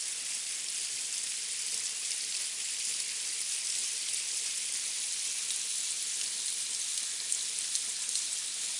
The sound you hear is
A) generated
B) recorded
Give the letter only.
B